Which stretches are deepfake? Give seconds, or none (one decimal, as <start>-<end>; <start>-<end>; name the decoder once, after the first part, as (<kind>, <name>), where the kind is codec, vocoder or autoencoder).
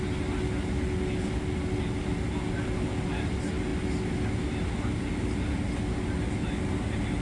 none